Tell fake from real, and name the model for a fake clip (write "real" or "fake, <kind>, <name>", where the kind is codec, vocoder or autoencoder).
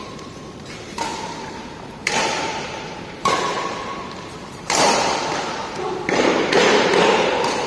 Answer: fake, vocoder, BigVGAN v2